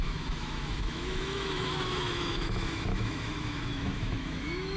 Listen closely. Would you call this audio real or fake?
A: fake